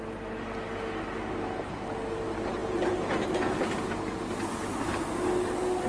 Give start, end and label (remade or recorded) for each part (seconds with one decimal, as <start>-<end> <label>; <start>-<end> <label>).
0.0-5.9 recorded

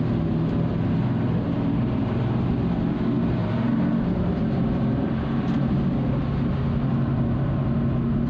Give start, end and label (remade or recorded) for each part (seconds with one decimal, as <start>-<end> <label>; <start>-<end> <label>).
0.0-1.8 recorded; 1.8-2.5 remade; 2.5-3.4 recorded; 3.4-6.2 remade; 6.2-8.3 recorded

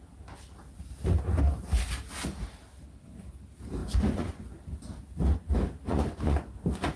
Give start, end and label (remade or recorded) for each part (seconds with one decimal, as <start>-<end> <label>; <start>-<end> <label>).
0.0-3.8 recorded; 3.8-4.5 remade; 4.5-5.9 recorded; 5.9-6.5 remade; 6.5-7.0 recorded

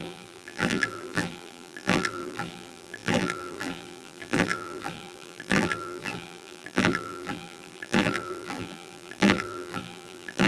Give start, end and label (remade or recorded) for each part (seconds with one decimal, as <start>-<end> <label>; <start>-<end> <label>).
0.0-10.5 remade

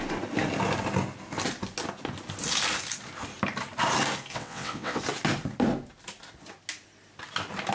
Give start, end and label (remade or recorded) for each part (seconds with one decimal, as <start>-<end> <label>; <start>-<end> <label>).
0.0-4.3 recorded; 4.3-5.0 remade; 5.0-7.7 recorded

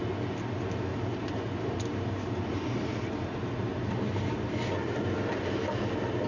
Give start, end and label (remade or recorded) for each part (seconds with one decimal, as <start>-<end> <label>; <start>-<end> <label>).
0.0-0.9 recorded; 0.9-4.7 remade; 4.7-6.3 recorded

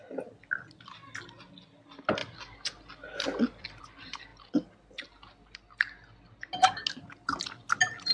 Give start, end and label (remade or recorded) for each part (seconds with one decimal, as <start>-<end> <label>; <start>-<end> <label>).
0.0-8.1 recorded

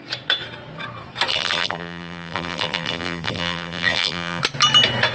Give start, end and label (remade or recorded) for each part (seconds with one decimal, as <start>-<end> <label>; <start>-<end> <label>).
0.0-1.3 recorded; 1.3-4.4 remade; 4.4-5.1 recorded